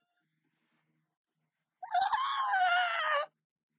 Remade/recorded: recorded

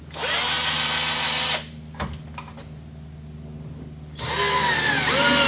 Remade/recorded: recorded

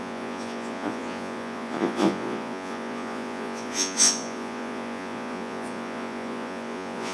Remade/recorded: remade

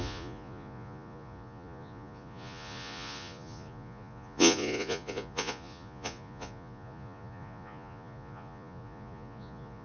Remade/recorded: remade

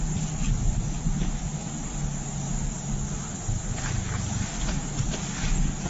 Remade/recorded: recorded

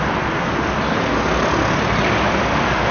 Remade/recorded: recorded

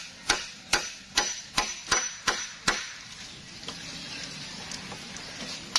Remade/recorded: recorded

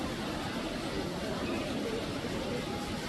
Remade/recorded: recorded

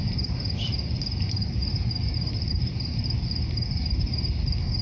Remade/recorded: remade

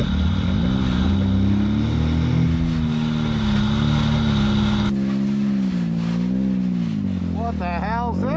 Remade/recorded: recorded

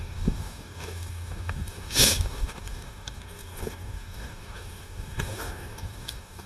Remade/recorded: remade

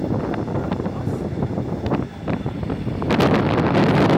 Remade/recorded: recorded